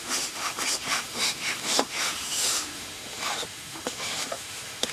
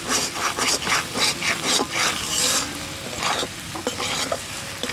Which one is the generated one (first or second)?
first